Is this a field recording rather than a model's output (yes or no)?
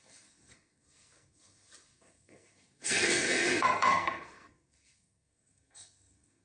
no